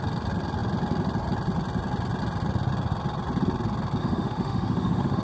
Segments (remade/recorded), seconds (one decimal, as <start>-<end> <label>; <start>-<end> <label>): 0.0-4.0 recorded; 4.0-5.2 remade